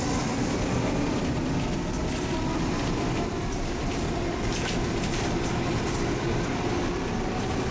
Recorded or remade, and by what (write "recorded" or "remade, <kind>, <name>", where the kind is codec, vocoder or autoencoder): remade, vocoder, BigVGAN v2